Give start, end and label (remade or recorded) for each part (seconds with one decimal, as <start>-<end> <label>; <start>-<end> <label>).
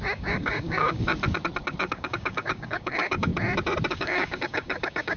0.0-1.1 remade; 1.1-1.8 recorded; 1.8-3.3 remade; 3.3-3.9 recorded; 3.9-5.2 remade